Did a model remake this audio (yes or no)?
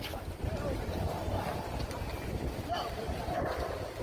yes